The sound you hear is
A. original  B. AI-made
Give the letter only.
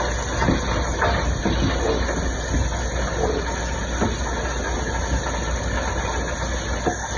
A